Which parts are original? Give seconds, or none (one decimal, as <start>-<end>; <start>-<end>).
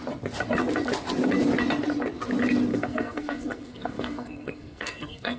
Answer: 0.0-2.7